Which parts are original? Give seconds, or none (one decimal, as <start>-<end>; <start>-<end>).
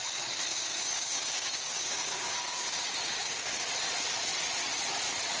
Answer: 0.0-0.5; 3.7-5.4